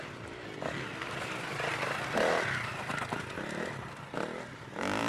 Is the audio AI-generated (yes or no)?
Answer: no